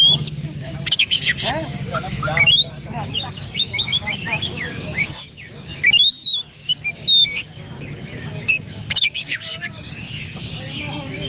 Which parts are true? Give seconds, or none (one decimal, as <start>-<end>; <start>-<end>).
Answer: none